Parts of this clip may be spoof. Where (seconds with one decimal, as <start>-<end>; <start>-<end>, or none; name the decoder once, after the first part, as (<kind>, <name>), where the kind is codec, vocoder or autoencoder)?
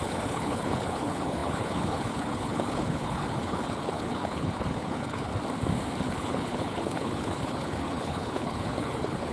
0.0-5.3 (codec, HILCodec); 6.0-9.3